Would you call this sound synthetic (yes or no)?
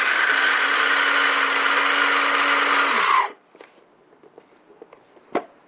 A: no